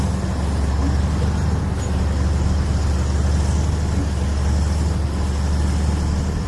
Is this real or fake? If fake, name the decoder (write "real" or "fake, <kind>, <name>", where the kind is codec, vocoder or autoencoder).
real